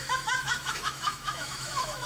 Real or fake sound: fake